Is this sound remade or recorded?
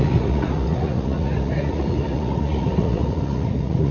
remade